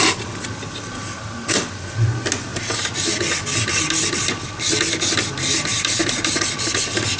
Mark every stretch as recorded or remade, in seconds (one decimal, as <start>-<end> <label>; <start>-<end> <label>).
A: 0.0-7.2 recorded

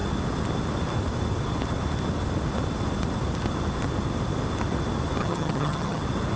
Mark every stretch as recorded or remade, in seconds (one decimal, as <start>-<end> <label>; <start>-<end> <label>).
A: 0.0-5.2 recorded; 5.2-6.0 remade; 6.0-6.4 recorded

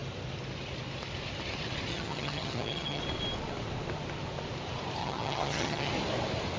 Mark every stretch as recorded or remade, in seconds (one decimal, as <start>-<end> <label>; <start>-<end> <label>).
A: 0.0-1.9 recorded; 1.9-3.0 remade; 3.0-5.0 recorded; 5.0-5.9 remade; 5.9-6.6 recorded

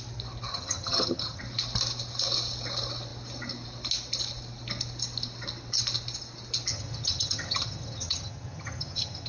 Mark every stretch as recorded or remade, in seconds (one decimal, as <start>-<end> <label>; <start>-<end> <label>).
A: 0.0-0.5 recorded; 0.5-1.4 remade; 1.4-6.7 recorded; 6.7-9.3 remade

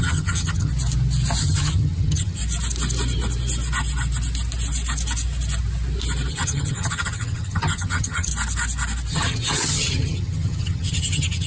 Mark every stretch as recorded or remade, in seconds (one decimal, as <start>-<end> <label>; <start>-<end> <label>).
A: 0.0-0.7 remade; 0.7-1.4 recorded; 1.4-2.4 remade; 2.4-6.3 recorded; 6.3-8.3 remade; 8.3-9.1 recorded; 9.1-11.5 remade

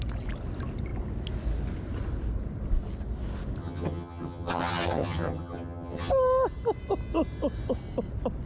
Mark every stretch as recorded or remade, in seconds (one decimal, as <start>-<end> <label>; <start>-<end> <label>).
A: 0.0-3.6 recorded; 3.6-6.1 remade; 6.1-8.5 recorded

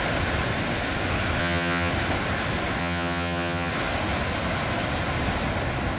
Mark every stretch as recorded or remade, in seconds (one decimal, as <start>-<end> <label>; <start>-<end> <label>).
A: 0.0-1.4 recorded; 1.4-1.9 remade; 1.9-2.8 recorded; 2.8-3.7 remade; 3.7-6.0 recorded